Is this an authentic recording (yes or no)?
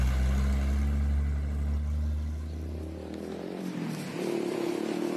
yes